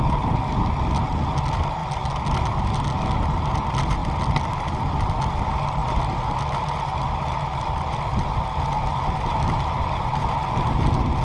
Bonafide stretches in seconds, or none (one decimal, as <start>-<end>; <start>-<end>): 0.0-11.2